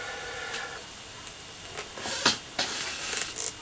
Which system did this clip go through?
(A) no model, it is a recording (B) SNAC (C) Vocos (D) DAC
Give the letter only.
A